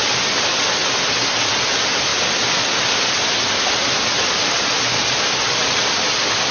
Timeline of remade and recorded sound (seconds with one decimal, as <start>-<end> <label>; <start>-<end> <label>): 0.0-6.5 recorded